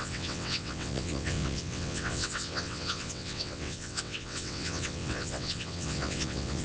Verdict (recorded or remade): remade